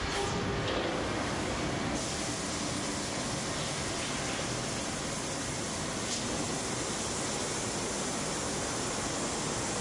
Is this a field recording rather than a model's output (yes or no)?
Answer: yes